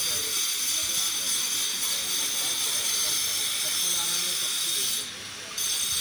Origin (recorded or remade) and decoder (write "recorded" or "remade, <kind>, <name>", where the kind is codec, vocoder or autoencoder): recorded